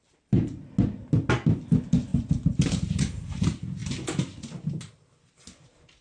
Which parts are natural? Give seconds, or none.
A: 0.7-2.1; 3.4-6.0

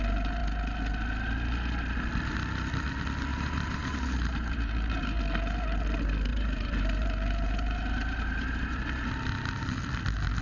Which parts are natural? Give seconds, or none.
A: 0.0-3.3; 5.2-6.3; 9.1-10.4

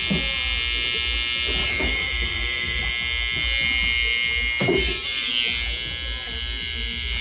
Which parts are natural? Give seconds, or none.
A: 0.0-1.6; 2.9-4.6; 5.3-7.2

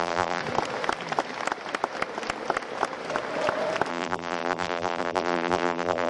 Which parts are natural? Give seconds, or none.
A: 0.4-3.9

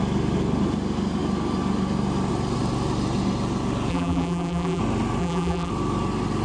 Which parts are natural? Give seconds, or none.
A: 0.0-3.9; 4.8-5.2; 5.7-6.4